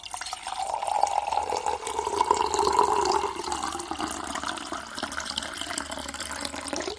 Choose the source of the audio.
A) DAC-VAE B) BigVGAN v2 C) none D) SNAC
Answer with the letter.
C